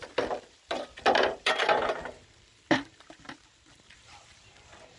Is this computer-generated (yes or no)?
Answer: yes